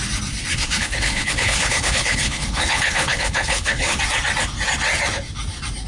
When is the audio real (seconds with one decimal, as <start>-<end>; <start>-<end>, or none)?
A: 0.0-0.5; 4.0-5.9